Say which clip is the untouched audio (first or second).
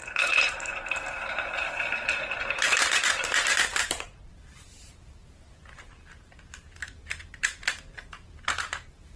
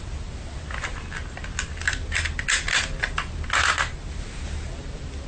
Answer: second